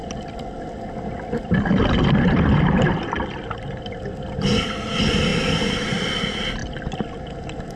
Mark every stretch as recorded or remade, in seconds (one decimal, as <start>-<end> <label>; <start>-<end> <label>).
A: 0.0-1.8 remade; 1.8-5.3 recorded; 5.3-6.1 remade; 6.1-6.6 recorded; 6.6-7.2 remade; 7.2-7.8 recorded